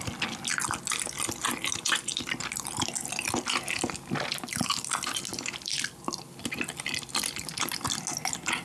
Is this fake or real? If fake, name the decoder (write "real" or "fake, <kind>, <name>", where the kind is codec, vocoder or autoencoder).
real